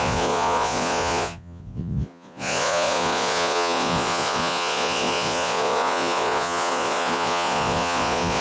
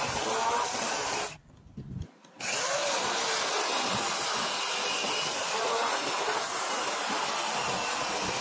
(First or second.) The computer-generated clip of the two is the first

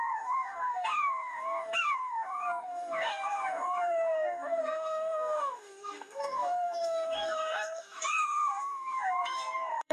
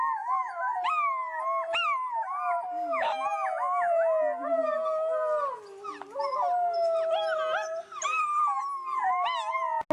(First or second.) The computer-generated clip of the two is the first